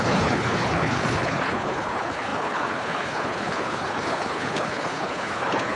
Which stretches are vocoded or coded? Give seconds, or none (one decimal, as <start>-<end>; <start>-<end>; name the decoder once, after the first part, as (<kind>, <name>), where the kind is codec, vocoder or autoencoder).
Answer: 0.0-5.8 (codec, HILCodec)